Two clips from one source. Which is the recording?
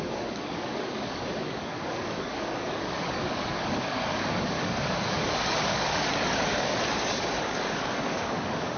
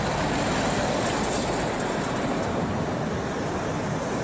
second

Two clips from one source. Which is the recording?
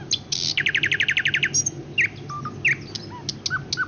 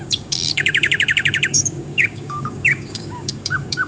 first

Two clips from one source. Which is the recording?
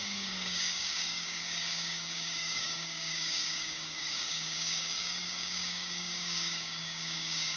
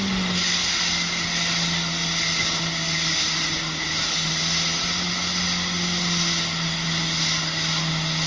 second